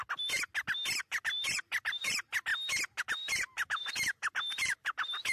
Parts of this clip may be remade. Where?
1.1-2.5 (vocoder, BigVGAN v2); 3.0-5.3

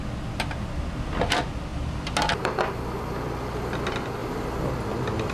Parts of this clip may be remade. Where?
none

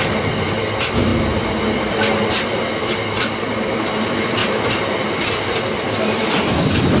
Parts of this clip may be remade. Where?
4.4-7.0 (vocoder, BigVGAN v2)

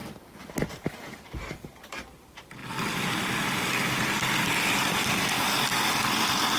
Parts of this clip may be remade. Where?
0.7-2.6 (vocoder, BigVGAN v2)

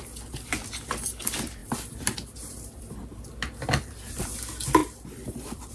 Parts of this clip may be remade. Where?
1.6-3.2 (vocoder, BigVGAN v2); 4.8-5.7